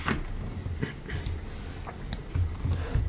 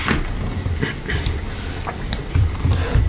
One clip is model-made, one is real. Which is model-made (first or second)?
second